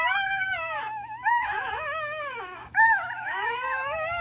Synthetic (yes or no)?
yes